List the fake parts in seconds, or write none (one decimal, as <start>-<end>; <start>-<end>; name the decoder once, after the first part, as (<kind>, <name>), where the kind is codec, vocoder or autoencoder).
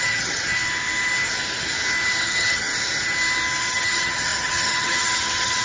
0.0-0.6 (vocoder, HiFi-GAN); 2.2-2.7; 3.6-5.6